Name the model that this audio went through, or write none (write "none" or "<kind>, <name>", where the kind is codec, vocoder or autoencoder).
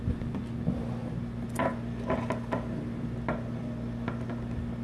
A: none